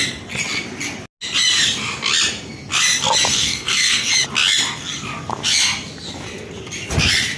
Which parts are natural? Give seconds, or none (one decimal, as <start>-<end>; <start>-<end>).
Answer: 0.0-3.3; 4.1-7.4